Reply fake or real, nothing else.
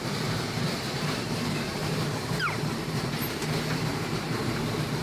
fake